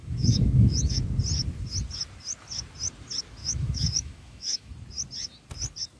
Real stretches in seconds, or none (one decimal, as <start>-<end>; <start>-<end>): 1.0-3.4; 4.7-6.0